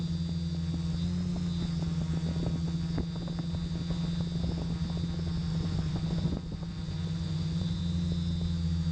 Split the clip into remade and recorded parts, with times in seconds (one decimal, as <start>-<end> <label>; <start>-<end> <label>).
0.0-5.5 recorded; 5.5-7.8 remade; 7.8-8.9 recorded